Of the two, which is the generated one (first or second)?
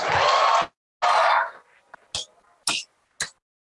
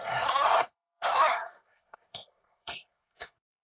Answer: second